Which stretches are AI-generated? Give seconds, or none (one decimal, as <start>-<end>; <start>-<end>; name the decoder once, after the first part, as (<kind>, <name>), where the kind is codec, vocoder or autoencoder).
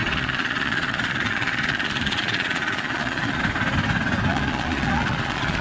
0.0-3.4 (vocoder, Vocos); 4.3-5.6